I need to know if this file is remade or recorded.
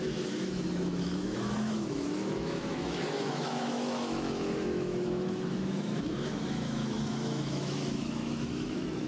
remade